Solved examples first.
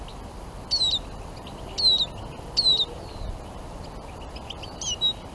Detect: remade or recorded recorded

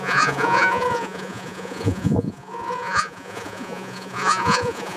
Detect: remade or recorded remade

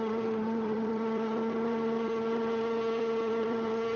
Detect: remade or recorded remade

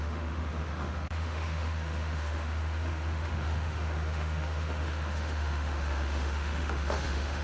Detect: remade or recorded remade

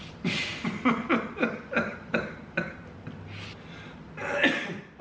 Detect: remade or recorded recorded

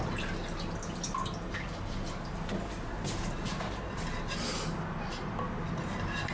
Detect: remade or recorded recorded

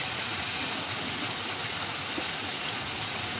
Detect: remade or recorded remade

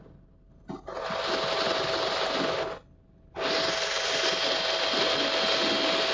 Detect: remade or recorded recorded